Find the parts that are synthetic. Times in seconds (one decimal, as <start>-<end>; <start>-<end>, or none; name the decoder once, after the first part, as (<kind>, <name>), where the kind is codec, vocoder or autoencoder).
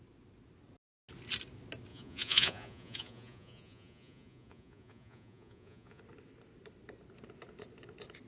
1.9-6.0 (vocoder, Vocos)